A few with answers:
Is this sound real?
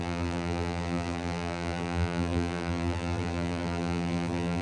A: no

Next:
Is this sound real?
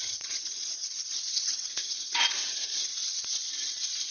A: no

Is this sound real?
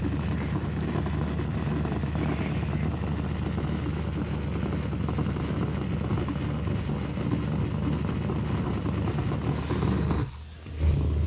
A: yes